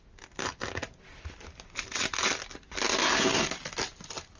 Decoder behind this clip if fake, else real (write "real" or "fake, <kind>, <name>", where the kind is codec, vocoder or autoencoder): real